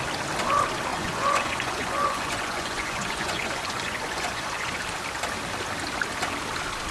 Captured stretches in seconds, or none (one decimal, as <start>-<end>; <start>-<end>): 0.0-0.9; 4.8-6.9